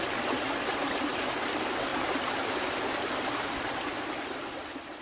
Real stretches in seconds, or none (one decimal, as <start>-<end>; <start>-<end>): 0.0-1.9